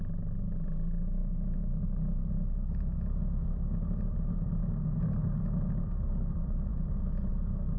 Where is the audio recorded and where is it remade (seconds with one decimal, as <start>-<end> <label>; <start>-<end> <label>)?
0.0-6.7 recorded; 6.7-7.3 remade; 7.3-7.8 recorded